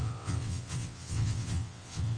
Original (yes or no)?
no